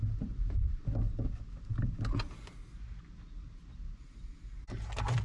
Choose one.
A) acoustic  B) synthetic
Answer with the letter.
A